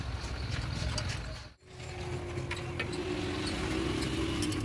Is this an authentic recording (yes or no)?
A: yes